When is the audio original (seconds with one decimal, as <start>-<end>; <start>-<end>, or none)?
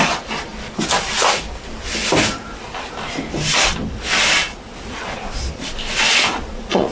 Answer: 0.0-4.4; 5.2-6.1